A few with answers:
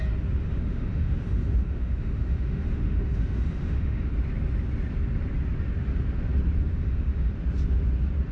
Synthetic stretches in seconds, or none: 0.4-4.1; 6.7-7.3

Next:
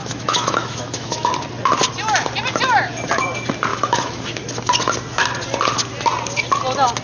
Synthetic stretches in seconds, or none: 0.0-1.3; 3.7-4.4

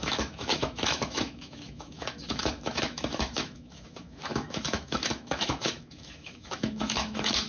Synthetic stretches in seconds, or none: 0.0-7.5

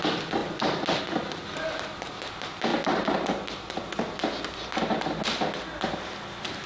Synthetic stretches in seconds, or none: none